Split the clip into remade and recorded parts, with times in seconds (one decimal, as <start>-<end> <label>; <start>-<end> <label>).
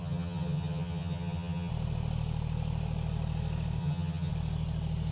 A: 0.0-1.7 remade; 1.7-3.8 recorded; 3.8-4.3 remade; 4.3-5.1 recorded